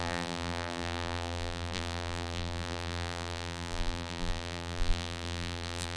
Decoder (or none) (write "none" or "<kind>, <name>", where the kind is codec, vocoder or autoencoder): vocoder, BigVGAN v2